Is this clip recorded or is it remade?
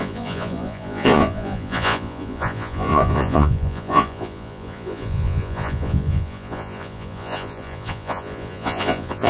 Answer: remade